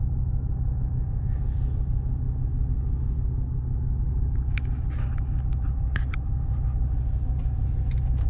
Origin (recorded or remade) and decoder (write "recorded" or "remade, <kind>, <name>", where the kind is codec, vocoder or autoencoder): recorded